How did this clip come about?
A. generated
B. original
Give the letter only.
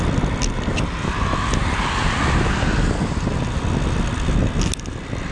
B